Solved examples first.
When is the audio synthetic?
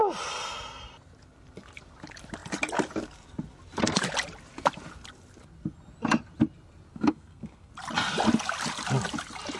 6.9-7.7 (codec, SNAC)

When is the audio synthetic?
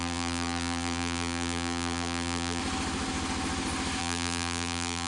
0.0-2.6 (vocoder, BigVGAN v2); 4.0-5.1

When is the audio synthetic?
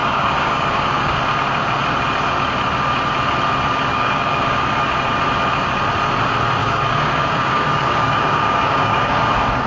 0.0-1.2 (codec, DAC); 3.9-4.7; 6.6-9.2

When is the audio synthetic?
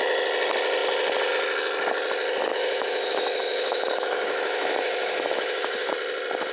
2.5-5.9 (autoencoder, DAC-VAE)